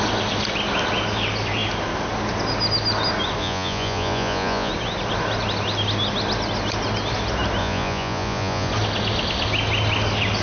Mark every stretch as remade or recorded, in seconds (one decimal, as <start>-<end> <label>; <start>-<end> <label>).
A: 0.0-3.4 recorded; 3.4-4.7 remade; 4.7-7.6 recorded; 7.6-8.7 remade; 8.7-10.4 recorded